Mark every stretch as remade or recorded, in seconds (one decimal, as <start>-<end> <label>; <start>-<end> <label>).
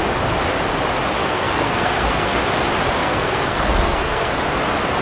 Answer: 0.0-1.2 recorded; 1.2-2.4 remade; 2.4-3.0 recorded; 3.0-4.4 remade; 4.4-5.0 recorded